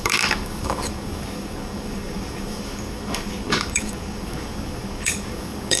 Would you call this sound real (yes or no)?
no